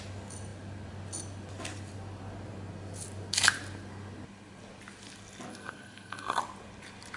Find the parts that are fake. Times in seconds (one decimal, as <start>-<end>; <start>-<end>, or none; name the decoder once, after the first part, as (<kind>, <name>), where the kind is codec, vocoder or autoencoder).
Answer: 5.5-6.4 (codec, SNAC)